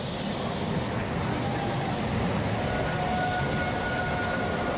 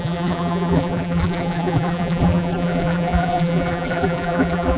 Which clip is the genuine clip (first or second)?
first